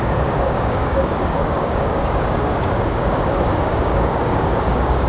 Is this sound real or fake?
fake